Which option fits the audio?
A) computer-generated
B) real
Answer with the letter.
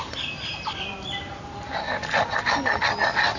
B